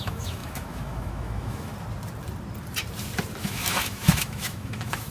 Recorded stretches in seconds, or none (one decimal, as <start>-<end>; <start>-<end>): 1.7-3.4